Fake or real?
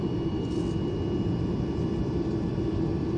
fake